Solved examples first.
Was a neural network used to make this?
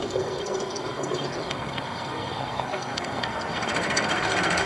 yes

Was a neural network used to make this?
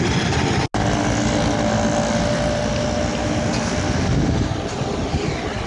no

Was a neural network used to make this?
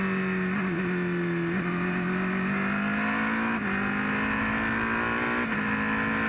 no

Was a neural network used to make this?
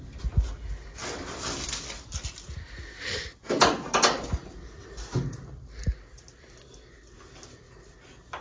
no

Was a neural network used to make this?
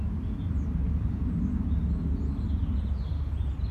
no